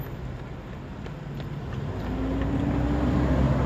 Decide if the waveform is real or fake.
real